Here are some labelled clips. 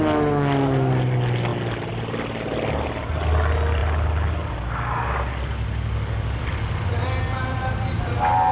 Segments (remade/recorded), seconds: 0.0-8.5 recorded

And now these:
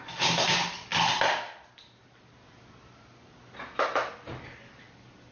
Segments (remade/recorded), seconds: 0.0-5.3 recorded

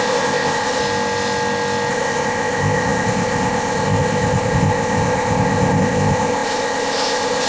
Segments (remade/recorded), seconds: 0.0-0.8 remade; 0.8-1.9 recorded; 1.9-7.5 remade